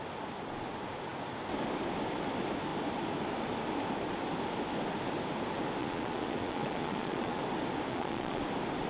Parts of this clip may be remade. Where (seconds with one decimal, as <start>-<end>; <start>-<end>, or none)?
5.8-7.4; 7.9-8.4